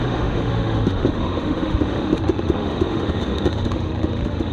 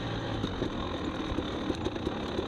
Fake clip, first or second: first